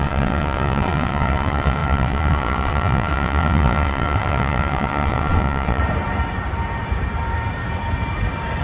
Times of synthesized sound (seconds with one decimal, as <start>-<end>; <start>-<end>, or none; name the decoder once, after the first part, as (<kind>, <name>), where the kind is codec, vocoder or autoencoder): 0.0-5.8 (vocoder, WaveNeXt)

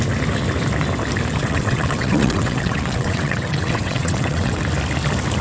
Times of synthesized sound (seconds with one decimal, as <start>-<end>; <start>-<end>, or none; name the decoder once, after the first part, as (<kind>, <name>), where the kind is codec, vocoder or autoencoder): 1.4-4.6 (vocoder, WaveNeXt)

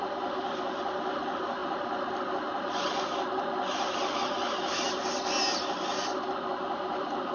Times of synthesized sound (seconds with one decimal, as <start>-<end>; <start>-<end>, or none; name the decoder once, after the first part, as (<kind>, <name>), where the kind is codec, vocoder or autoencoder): none